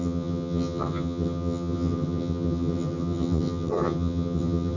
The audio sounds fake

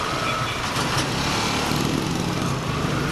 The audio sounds real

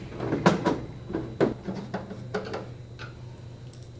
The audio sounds real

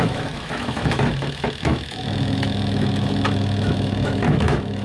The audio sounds fake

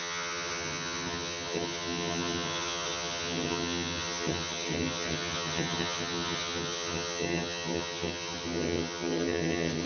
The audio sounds fake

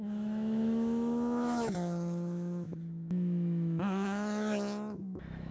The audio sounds fake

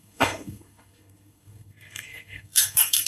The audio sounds fake